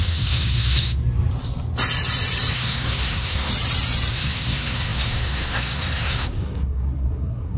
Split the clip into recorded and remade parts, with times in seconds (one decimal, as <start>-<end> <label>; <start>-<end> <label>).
0.0-1.0 remade; 1.0-2.5 recorded; 2.5-3.5 remade; 3.5-4.1 recorded; 4.1-7.6 remade